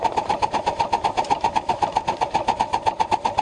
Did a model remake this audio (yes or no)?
no